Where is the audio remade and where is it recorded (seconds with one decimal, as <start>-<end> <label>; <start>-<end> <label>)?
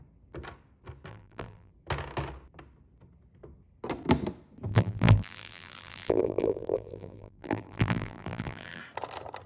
0.0-1.1 recorded; 1.1-1.7 remade; 1.7-4.7 recorded; 4.7-8.8 remade; 8.8-9.5 recorded